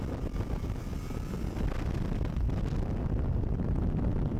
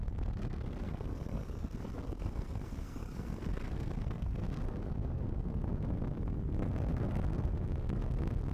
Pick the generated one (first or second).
second